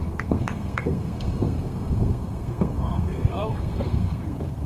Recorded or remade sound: remade